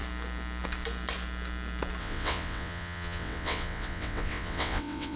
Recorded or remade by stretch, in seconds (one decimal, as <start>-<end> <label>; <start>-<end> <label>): 0.0-2.0 recorded; 2.0-5.2 remade

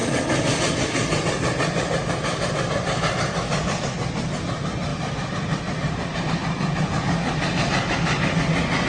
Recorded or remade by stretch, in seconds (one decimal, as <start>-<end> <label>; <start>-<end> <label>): 0.0-8.9 recorded

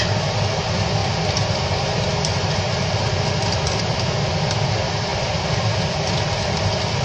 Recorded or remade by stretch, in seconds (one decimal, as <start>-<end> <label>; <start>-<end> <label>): 0.0-7.0 recorded

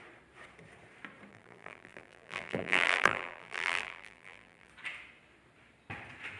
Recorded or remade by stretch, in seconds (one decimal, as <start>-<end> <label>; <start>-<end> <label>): 0.0-1.3 recorded; 1.3-4.7 remade; 4.7-6.4 recorded

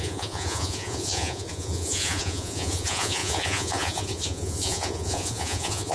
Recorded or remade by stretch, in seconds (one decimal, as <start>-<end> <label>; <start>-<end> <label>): 0.0-5.9 remade

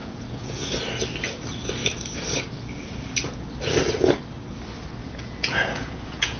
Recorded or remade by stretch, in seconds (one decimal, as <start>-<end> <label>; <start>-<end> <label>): 0.0-0.7 remade; 0.7-5.0 recorded; 5.0-6.4 remade